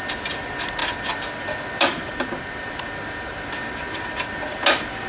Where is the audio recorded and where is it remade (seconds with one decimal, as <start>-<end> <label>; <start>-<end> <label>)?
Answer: 0.0-5.1 recorded